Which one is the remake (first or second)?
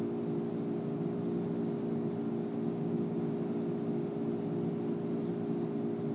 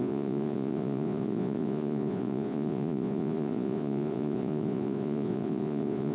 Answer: second